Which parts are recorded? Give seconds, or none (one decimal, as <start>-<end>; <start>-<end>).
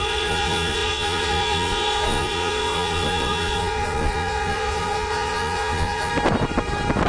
6.1-7.1